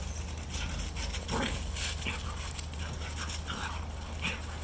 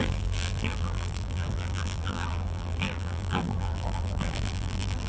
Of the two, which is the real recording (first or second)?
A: first